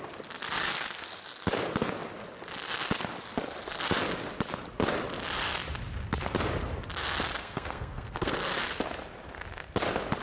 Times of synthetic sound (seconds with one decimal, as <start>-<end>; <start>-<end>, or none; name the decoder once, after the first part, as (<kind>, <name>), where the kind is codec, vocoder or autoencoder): 7.4-8.6 (codec, SNAC)